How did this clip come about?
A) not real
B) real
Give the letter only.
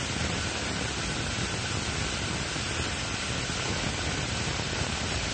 B